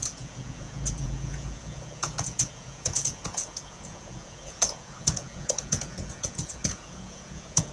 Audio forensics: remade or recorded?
remade